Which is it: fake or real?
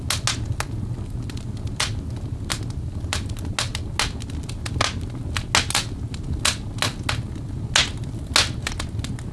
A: real